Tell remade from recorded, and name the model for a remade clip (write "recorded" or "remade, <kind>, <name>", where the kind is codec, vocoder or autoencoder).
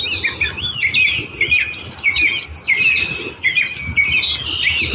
recorded